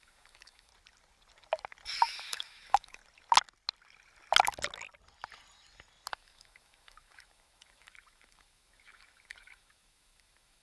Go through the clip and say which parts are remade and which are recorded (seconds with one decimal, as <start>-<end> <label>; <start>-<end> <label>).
0.0-0.7 remade; 0.7-2.0 recorded; 2.0-3.0 remade; 3.0-6.1 recorded; 6.1-10.6 remade

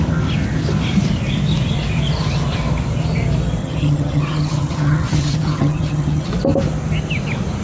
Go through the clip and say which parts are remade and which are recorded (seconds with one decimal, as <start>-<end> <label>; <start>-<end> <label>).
0.0-3.6 recorded; 3.6-6.3 remade; 6.3-7.6 recorded

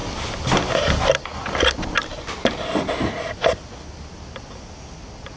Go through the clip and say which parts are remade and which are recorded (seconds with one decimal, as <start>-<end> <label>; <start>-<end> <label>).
0.0-5.4 recorded

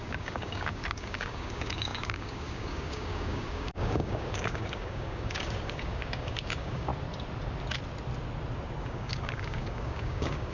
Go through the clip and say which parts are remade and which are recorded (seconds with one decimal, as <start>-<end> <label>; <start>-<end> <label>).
0.0-6.9 remade; 6.9-8.8 recorded; 8.8-10.5 remade

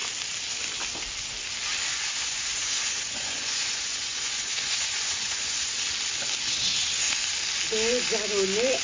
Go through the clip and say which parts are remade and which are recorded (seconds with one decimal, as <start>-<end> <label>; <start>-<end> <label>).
0.0-1.9 recorded; 1.9-5.7 remade; 5.7-8.8 recorded

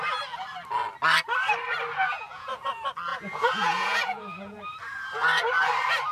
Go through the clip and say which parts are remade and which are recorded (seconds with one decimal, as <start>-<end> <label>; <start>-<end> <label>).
0.0-2.0 recorded; 2.0-2.6 remade; 2.6-3.1 recorded; 3.1-4.6 remade; 4.6-6.1 recorded